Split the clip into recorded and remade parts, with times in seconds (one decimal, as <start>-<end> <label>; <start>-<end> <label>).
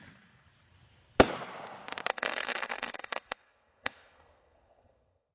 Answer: 0.0-2.1 recorded; 2.1-5.3 remade